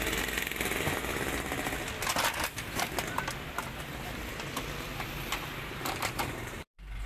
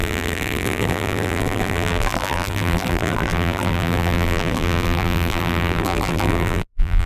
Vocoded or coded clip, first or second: second